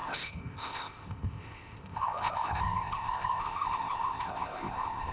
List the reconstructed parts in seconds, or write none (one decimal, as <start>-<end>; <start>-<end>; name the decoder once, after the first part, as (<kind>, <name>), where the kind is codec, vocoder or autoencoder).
0.0-5.1 (codec, ZipCodec)